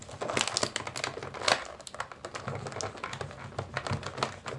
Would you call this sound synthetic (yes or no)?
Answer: no